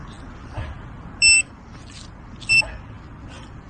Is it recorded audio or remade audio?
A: recorded